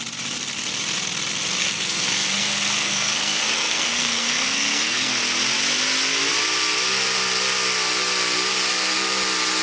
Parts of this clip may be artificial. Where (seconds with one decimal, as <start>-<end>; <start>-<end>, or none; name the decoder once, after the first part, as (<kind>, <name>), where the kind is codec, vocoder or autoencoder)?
1.6-5.2 (codec, SNAC)